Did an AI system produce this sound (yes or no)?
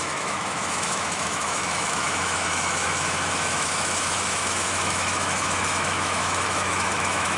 yes